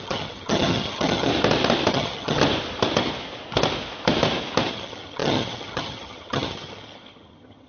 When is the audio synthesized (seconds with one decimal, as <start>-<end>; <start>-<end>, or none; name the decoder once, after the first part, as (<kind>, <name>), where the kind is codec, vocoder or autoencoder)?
0.0-1.3 (vocoder, HiFi-GAN); 1.9-2.4; 4.7-7.7